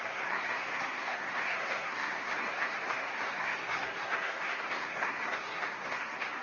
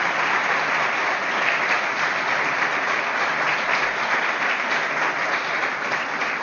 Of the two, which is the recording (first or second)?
second